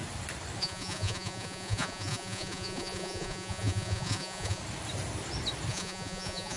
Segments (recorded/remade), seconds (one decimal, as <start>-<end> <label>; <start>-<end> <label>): 0.0-0.6 recorded; 0.6-4.6 remade; 4.6-5.7 recorded; 5.7-6.6 remade